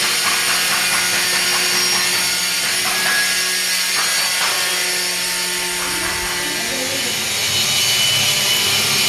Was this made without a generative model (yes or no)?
yes